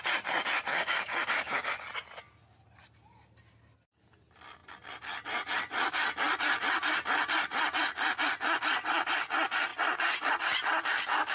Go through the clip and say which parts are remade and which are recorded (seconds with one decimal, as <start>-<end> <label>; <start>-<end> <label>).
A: 0.0-0.7 recorded; 0.7-1.7 remade; 1.7-11.3 recorded